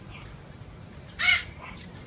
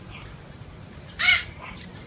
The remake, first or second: second